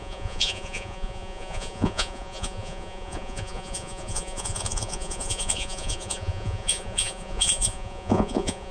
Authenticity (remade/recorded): remade